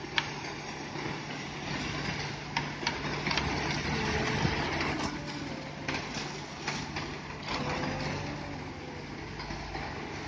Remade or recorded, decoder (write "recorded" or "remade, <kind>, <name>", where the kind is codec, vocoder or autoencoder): recorded